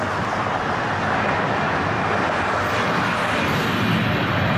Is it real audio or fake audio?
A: real